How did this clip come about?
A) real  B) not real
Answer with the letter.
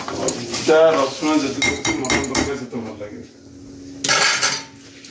A